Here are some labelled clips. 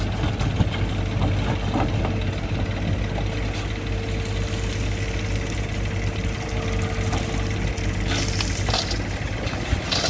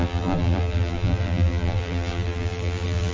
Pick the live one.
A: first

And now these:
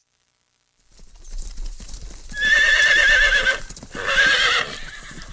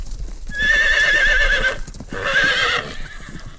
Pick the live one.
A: second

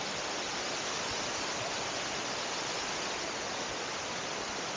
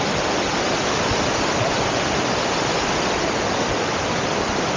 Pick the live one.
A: first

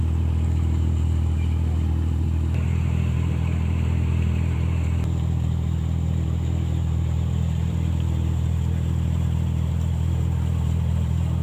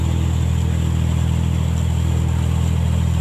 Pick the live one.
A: second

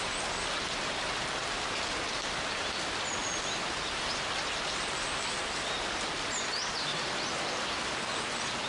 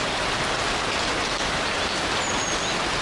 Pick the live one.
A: second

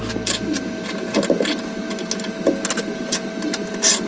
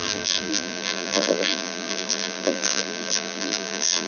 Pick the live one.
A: first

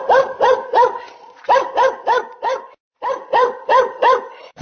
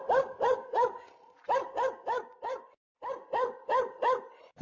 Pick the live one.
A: second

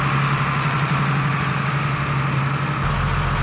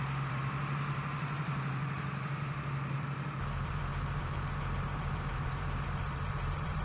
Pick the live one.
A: first